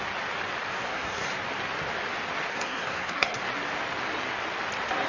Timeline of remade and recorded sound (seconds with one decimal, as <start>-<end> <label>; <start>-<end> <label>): 0.0-0.7 recorded; 0.7-1.3 remade; 1.3-2.5 recorded; 2.5-3.4 remade; 3.4-5.1 recorded